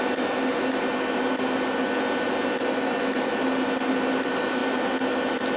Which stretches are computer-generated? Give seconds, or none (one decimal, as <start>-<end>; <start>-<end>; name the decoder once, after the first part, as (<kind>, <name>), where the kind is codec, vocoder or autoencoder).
none